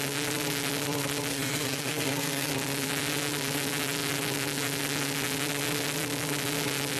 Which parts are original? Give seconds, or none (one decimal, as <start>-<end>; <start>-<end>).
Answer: 0.0-1.3; 2.5-7.0